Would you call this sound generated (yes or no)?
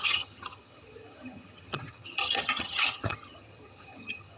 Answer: yes